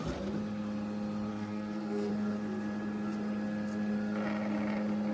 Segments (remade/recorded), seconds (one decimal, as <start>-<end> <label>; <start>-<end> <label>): 0.0-1.3 recorded; 1.3-2.1 remade; 2.1-5.1 recorded